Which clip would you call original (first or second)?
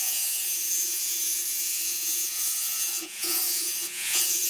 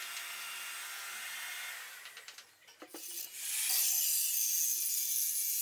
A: second